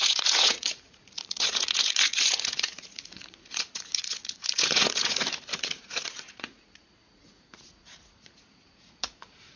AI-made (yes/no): yes